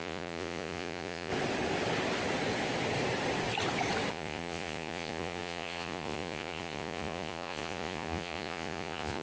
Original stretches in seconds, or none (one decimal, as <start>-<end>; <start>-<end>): 1.3-4.1